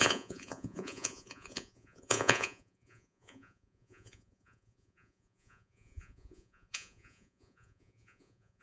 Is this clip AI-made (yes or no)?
yes